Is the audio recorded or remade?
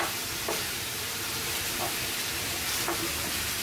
recorded